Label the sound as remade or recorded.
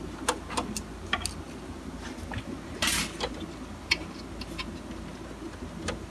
recorded